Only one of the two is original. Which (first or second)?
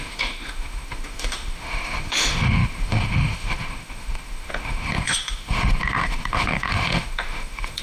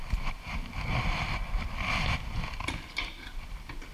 second